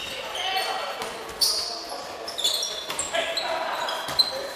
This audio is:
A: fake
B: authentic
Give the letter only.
B